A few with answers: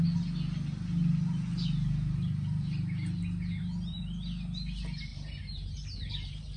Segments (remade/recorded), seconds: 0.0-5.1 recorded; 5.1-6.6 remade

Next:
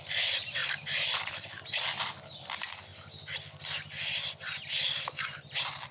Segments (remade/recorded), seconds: 0.0-0.6 recorded; 0.6-2.1 remade; 2.1-5.9 recorded

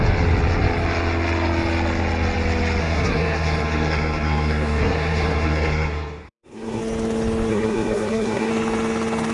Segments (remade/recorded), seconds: 0.0-2.8 recorded; 2.8-6.8 remade; 6.8-7.5 recorded; 7.5-8.5 remade; 8.5-9.3 recorded

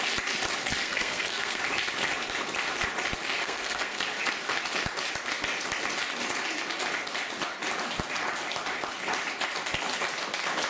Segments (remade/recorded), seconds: 0.0-0.8 recorded; 0.8-1.6 remade; 1.6-3.4 recorded; 3.4-4.0 remade; 4.0-10.7 recorded

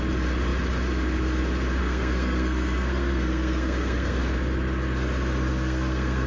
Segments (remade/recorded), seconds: 0.0-1.8 recorded; 1.8-4.2 remade; 4.2-5.5 recorded; 5.5-6.3 remade

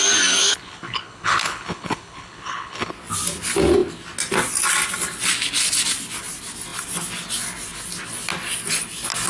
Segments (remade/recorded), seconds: 0.0-0.4 recorded; 0.4-2.9 remade; 2.9-9.3 recorded

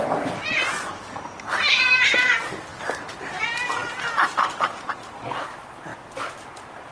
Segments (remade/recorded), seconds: 0.0-5.9 recorded; 5.9-6.9 remade